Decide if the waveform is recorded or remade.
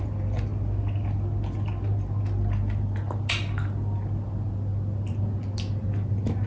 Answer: recorded